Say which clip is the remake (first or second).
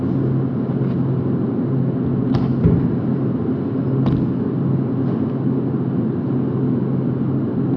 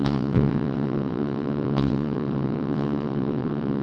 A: second